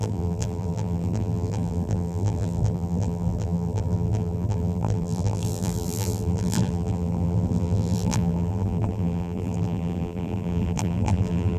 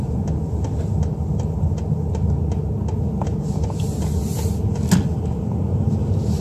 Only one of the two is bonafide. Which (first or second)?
second